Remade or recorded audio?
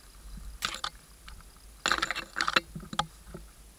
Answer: recorded